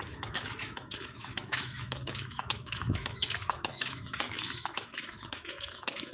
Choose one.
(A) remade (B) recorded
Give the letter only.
A